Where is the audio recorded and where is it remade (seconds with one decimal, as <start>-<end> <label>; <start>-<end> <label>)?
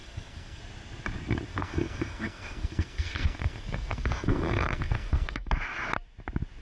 0.0-0.6 remade; 0.6-1.5 recorded; 1.5-5.5 remade; 5.5-6.6 recorded